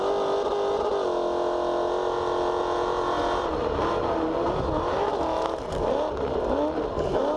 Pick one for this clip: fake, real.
real